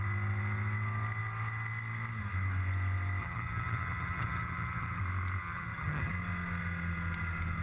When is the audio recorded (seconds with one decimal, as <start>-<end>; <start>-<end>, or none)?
0.0-3.2; 5.0-5.4; 6.1-7.6